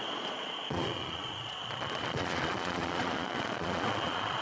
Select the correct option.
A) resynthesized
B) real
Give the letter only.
A